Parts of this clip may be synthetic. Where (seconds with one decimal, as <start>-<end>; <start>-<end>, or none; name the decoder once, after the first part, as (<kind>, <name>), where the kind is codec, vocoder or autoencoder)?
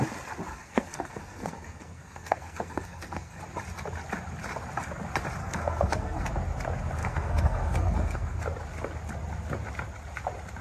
0.5-3.4 (codec, SNAC); 5.4-6.3; 7.0-8.4